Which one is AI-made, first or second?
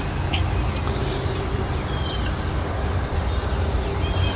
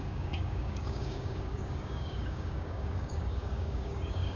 second